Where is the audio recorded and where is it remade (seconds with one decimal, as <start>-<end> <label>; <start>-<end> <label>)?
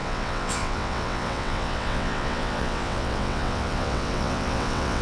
0.0-5.0 remade